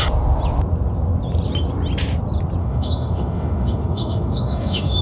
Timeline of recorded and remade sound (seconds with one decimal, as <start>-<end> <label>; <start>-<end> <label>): 0.0-2.6 recorded; 2.6-5.0 remade